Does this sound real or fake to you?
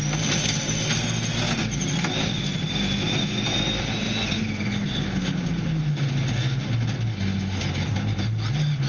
real